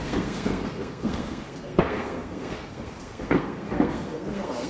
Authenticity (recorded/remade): remade